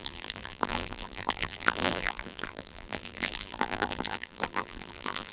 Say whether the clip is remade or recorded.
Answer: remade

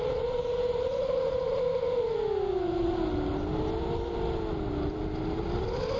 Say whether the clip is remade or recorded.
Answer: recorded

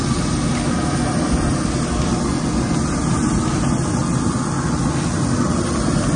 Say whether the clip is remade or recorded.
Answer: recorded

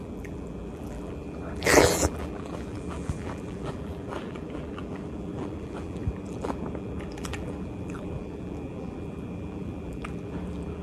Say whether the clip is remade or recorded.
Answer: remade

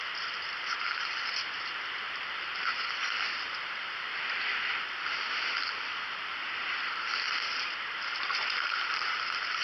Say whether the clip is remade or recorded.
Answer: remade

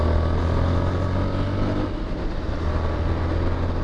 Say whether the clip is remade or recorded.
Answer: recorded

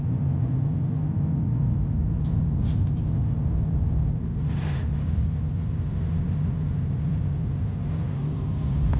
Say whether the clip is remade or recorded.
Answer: remade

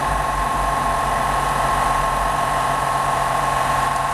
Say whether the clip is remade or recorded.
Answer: remade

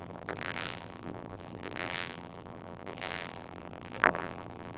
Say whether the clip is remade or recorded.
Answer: remade